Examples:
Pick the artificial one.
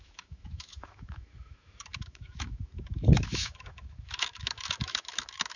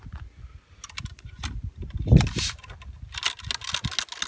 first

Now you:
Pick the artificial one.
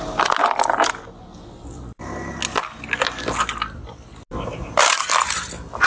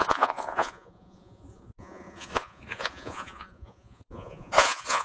second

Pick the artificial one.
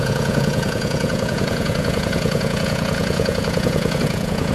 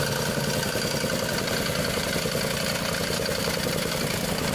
first